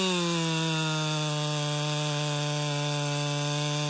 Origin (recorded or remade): recorded